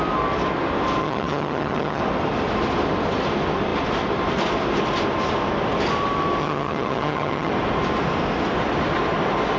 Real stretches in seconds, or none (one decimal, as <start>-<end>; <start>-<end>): 0.0-1.0; 2.0-6.4; 7.5-9.6

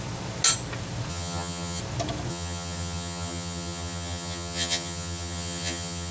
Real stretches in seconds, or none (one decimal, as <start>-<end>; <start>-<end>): 0.0-1.1; 1.8-2.3

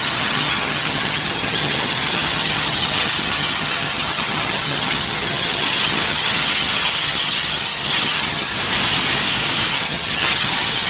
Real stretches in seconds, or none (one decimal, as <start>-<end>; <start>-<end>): 8.5-9.7

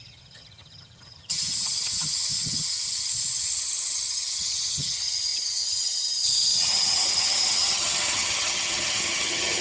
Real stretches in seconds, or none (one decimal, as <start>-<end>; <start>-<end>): none